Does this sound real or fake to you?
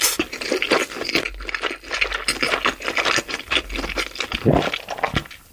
real